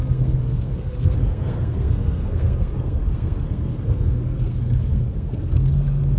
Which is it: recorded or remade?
remade